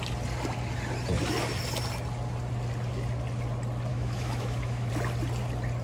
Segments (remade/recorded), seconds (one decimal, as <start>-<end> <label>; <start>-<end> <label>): 0.0-3.9 recorded; 3.9-4.9 remade; 4.9-5.8 recorded